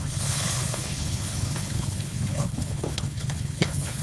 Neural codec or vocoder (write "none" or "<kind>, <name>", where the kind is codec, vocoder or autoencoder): codec, HILCodec